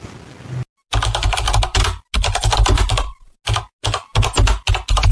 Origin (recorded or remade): recorded